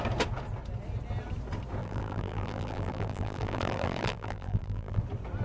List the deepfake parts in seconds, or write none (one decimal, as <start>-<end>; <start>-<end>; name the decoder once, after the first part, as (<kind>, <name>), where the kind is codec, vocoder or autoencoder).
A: 1.8-5.0 (vocoder, BigVGAN v2)